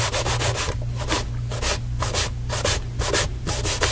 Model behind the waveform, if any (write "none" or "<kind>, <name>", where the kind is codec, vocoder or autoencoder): none